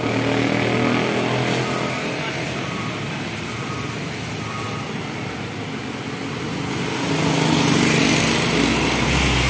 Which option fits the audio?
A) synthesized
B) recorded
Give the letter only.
B